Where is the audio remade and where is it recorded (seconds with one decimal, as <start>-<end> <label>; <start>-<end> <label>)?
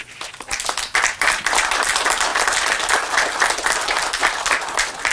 0.0-5.1 recorded